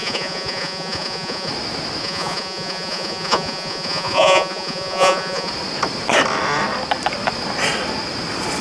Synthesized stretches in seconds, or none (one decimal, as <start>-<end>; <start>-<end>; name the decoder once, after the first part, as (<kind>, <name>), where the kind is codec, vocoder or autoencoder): 0.0-1.5 (vocoder, Vocos); 2.0-5.5